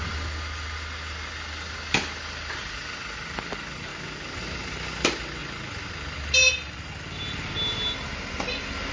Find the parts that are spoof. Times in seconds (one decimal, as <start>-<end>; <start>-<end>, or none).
none